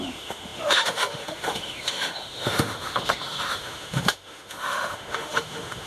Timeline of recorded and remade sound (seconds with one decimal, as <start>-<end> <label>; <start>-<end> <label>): 0.0-5.9 remade